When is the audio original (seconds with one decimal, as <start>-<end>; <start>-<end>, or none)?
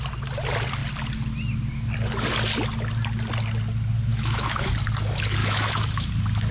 0.0-4.1; 4.7-5.4; 6.1-6.5